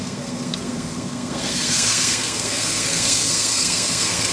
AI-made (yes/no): yes